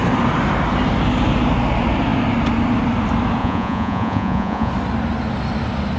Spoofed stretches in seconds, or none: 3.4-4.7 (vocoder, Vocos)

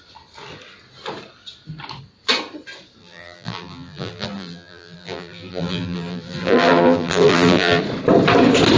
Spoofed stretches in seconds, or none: 3.0-7.8 (vocoder, BigVGAN v2)

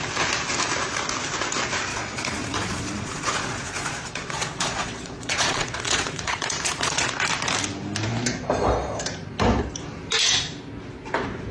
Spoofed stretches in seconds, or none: 1.9-7.1 (vocoder, Vocos)

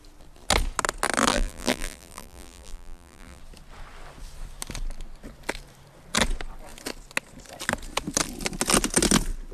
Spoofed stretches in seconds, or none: 1.3-3.4 (vocoder, BigVGAN v2)

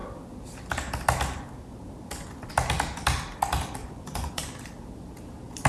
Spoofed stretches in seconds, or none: 3.8-4.4 (vocoder, Vocos)

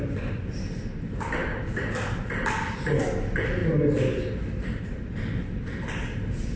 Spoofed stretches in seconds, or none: none